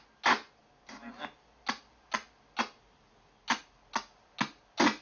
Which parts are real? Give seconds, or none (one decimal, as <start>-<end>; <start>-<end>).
0.0-5.0